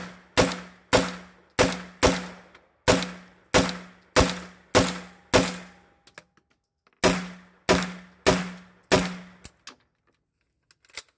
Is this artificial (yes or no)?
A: no